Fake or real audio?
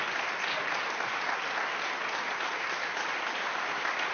fake